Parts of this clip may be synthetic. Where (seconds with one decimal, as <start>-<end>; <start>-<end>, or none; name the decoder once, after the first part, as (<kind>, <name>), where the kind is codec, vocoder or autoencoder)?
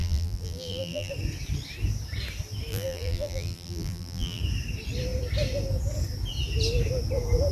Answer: 0.0-1.1 (vocoder, BigVGAN v2); 2.7-4.4